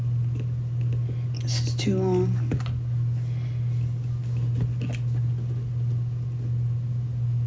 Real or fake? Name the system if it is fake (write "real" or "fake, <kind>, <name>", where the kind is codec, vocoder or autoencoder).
real